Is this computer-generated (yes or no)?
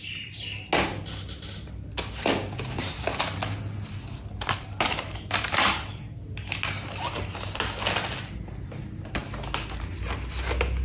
no